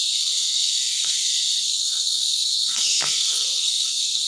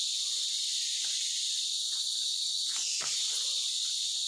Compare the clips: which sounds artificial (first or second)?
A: first